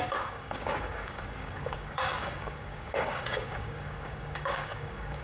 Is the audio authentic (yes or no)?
no